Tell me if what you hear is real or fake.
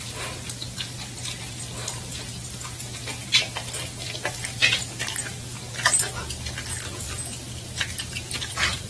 real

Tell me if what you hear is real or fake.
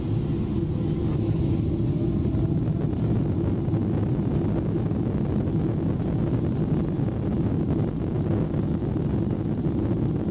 real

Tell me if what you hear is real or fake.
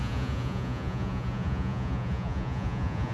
fake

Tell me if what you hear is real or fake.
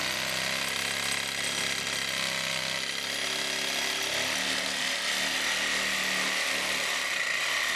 real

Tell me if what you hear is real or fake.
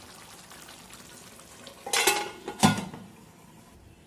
real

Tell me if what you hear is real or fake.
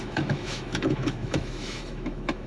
fake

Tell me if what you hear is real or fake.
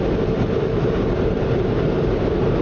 real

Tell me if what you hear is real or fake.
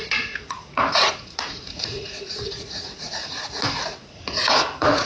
fake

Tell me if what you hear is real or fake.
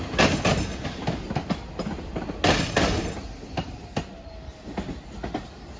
real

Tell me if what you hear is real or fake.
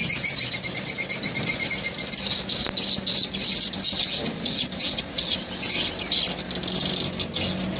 real